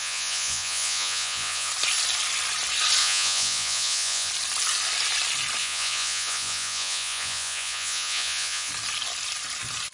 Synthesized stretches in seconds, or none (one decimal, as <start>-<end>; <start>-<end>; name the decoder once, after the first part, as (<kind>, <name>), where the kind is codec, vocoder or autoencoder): 0.0-1.7 (vocoder, Vocos); 3.0-4.3; 5.6-8.7